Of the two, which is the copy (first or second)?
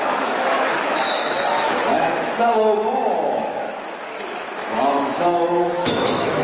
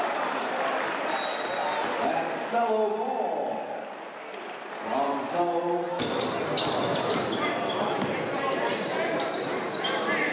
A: first